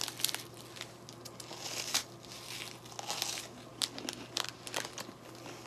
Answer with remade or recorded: recorded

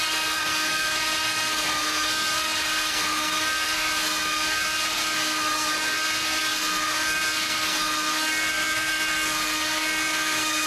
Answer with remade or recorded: remade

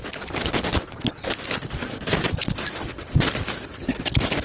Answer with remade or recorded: recorded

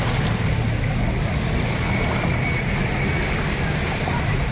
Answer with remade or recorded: recorded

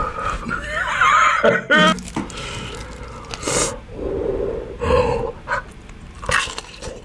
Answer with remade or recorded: recorded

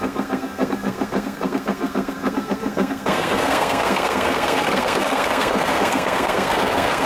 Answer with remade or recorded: remade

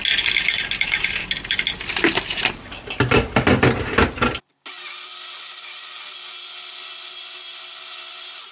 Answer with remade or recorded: recorded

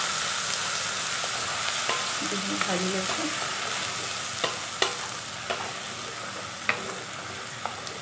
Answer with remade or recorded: recorded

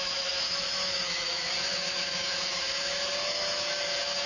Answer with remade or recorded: remade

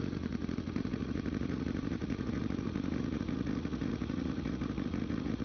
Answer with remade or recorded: remade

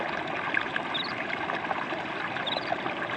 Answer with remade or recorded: recorded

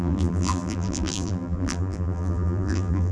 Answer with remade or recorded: remade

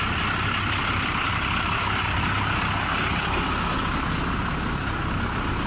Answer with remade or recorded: recorded